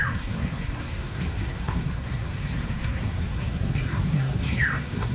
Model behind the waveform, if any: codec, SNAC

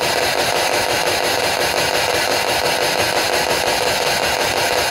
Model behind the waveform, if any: none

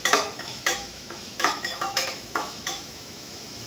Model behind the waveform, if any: autoencoder, DAC-VAE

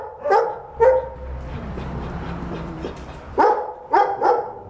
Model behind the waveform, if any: vocoder, BigVGAN v2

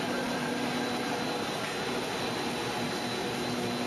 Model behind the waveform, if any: none